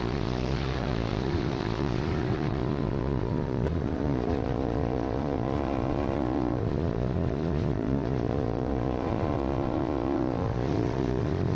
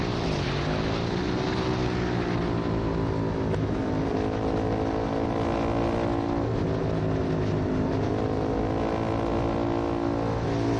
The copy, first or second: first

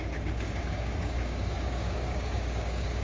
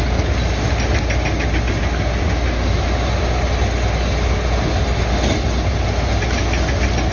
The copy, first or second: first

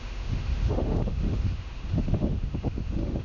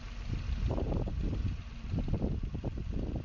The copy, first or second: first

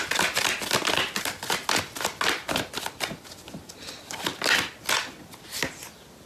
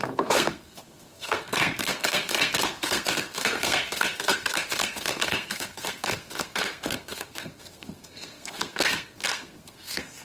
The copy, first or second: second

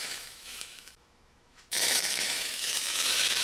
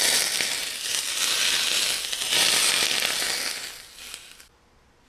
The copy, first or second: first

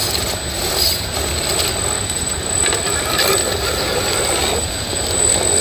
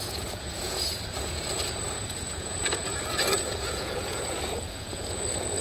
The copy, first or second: second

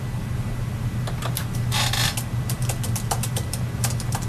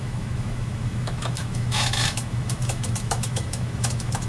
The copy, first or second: second